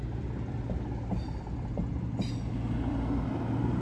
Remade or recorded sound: recorded